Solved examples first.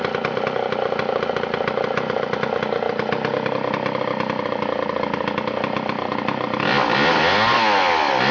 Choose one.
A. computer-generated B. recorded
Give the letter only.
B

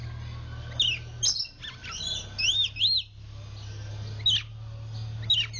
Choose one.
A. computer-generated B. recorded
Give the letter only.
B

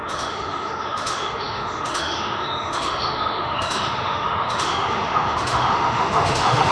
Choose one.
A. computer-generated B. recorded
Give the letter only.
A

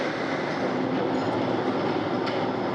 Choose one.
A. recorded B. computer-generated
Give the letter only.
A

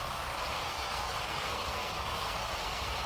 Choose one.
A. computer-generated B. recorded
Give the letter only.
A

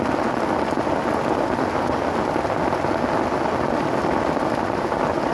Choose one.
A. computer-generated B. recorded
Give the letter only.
B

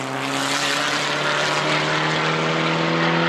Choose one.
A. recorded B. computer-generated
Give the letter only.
A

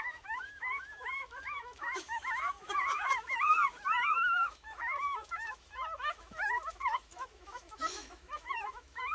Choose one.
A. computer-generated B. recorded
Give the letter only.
A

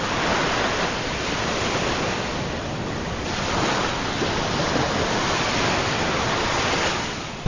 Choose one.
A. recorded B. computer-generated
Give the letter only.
A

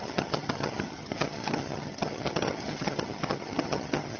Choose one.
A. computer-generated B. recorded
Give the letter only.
A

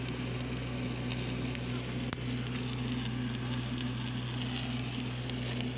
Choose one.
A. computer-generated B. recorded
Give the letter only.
B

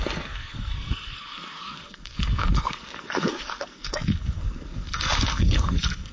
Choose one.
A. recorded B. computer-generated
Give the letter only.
B